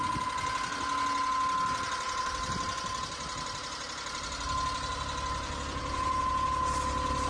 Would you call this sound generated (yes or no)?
no